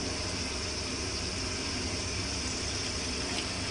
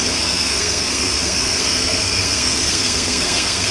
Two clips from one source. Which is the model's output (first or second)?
second